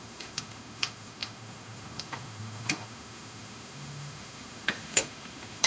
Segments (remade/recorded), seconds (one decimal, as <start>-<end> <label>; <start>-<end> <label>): 0.0-5.7 remade